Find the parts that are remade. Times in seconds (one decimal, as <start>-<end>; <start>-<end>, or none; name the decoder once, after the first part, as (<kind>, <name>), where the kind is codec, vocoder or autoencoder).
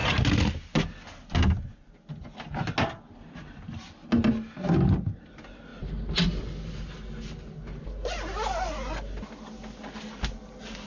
none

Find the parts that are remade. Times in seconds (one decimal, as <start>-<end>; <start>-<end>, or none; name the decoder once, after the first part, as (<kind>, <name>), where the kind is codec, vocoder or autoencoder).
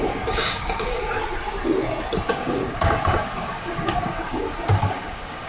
0.0-1.2 (codec, DAC); 2.3-5.5